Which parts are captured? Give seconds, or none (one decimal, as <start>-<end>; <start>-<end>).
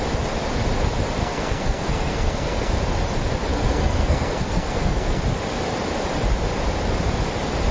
0.0-1.2; 2.7-3.5; 5.2-7.7